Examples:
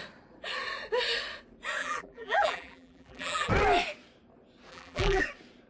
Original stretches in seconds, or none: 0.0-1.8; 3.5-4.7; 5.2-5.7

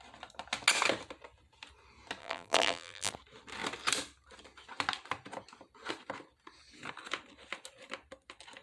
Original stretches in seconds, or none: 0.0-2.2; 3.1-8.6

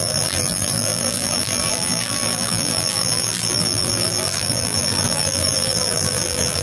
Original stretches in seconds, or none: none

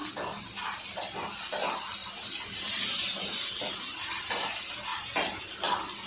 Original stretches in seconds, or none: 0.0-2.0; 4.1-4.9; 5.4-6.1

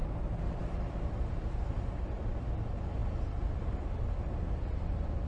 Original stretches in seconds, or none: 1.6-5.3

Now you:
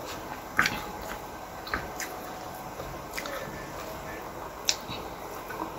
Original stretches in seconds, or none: 3.4-5.8